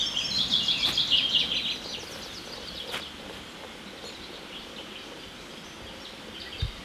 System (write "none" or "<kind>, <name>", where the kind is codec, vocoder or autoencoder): none